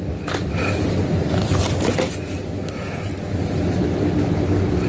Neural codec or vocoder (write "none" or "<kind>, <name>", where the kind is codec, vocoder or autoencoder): none